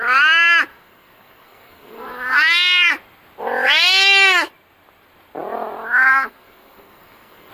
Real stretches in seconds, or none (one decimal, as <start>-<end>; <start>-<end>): 0.0-0.7; 2.9-6.1